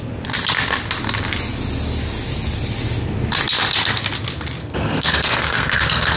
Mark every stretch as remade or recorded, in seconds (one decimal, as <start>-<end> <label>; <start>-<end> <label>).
0.0-4.6 recorded; 4.6-6.2 remade